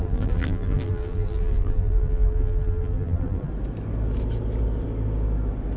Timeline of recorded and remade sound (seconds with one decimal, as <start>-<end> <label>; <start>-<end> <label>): 0.0-3.5 remade; 3.5-5.8 recorded